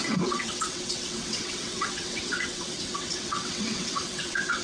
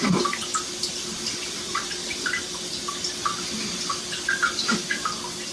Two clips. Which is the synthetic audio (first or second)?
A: first